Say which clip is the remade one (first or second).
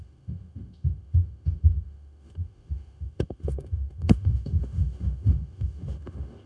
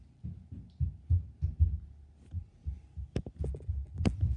first